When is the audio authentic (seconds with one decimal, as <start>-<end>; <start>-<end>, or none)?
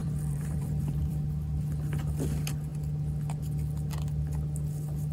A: 1.3-5.1